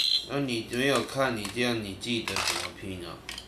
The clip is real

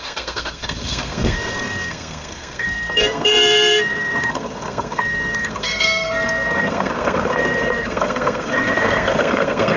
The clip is fake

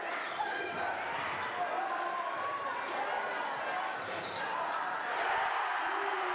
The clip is real